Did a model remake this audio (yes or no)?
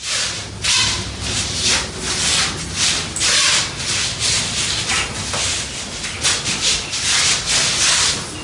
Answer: no